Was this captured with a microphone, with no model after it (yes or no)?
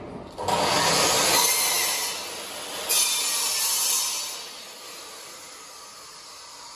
yes